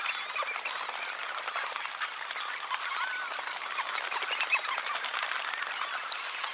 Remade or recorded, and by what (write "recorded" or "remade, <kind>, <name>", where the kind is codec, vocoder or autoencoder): recorded